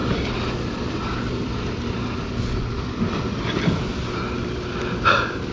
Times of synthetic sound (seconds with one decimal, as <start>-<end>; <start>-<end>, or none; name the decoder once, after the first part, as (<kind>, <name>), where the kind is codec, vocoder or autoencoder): none